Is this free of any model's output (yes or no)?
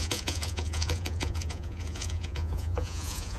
no